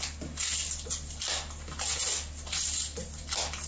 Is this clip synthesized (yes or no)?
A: no